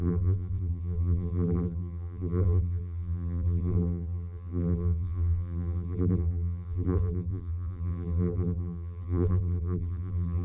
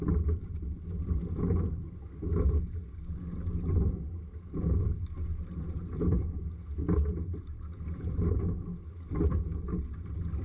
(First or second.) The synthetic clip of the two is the first